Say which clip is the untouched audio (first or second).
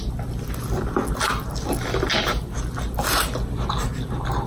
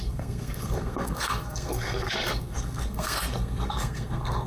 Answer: first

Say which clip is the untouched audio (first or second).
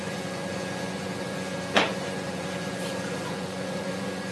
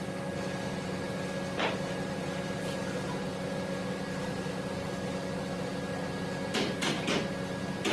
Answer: second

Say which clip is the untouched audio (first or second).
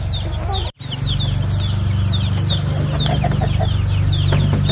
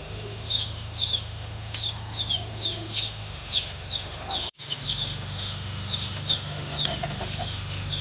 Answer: first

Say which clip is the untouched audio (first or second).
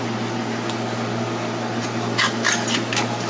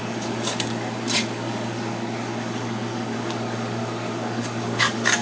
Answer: first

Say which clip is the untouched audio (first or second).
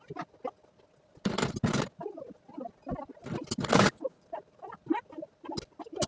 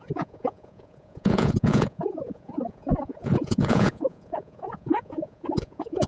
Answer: first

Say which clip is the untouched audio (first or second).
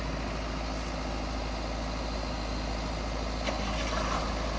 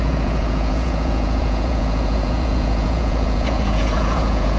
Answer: first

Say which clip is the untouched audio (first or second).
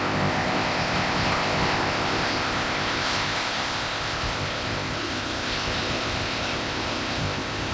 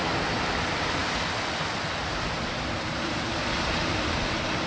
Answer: second